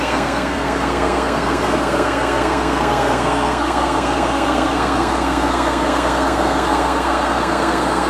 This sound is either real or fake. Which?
fake